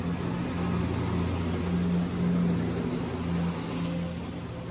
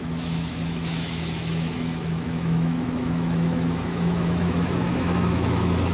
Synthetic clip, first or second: second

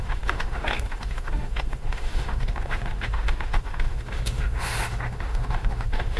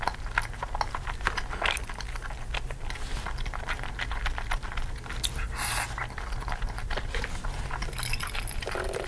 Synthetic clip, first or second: first